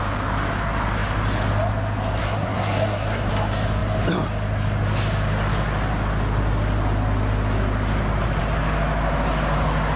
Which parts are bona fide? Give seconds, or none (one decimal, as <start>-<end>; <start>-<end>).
0.0-2.2; 3.3-10.0